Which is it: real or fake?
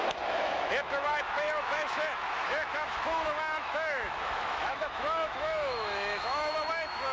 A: fake